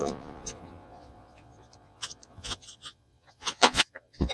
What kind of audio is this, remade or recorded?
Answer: remade